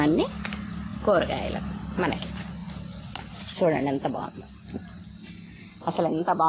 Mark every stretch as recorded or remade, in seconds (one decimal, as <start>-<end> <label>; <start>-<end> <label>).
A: 0.0-6.5 recorded